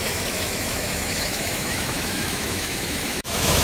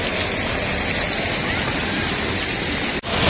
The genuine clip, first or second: second